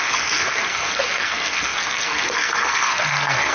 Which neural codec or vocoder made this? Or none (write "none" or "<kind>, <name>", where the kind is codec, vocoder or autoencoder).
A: codec, SNAC